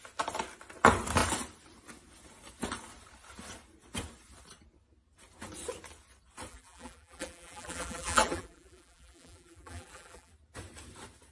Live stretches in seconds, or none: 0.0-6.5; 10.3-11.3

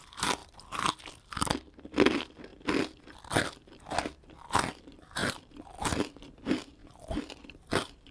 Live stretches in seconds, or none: 0.0-0.4; 0.9-5.2; 6.3-6.8

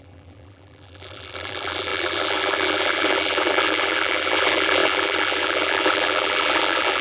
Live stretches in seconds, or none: none

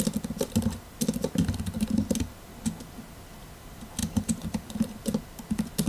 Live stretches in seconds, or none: 0.0-4.0; 4.6-5.9

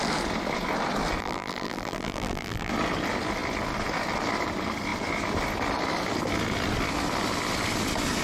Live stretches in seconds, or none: 0.0-1.2; 2.7-8.2

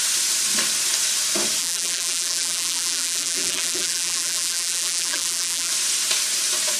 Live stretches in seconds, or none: 0.0-1.6; 5.7-6.8